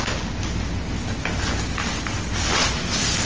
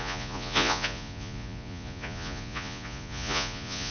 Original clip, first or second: first